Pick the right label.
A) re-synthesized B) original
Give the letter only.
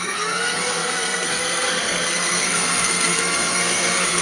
A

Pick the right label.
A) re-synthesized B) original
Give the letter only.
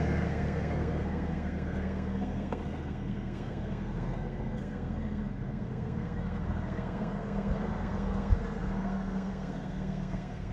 A